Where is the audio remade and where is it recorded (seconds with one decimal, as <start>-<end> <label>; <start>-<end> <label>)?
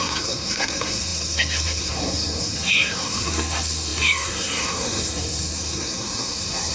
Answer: 0.0-6.7 remade